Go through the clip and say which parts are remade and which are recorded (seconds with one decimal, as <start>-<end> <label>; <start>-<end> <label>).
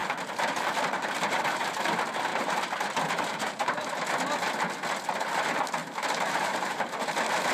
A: 0.0-1.7 remade; 1.7-2.3 recorded; 2.3-3.9 remade; 3.9-5.8 recorded; 5.8-6.9 remade; 6.9-7.5 recorded